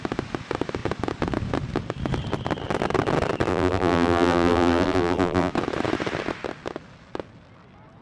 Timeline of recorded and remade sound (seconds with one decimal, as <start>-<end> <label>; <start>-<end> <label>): 0.0-3.5 recorded; 3.5-5.5 remade; 5.5-8.0 recorded